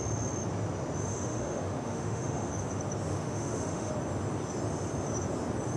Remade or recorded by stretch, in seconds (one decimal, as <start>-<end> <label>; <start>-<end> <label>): 0.0-1.1 recorded; 1.1-2.5 remade; 2.5-3.1 recorded; 3.1-3.9 remade; 3.9-5.8 recorded